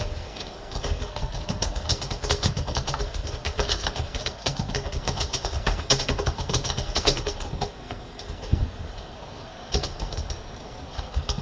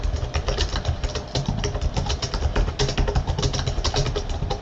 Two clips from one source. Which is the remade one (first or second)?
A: first